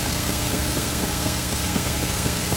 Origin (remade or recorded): remade